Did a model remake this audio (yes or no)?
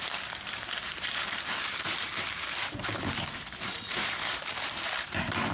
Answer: yes